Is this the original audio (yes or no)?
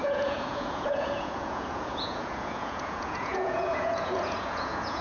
no